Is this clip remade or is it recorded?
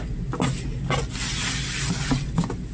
recorded